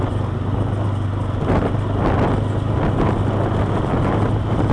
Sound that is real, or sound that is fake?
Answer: real